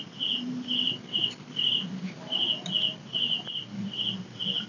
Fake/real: real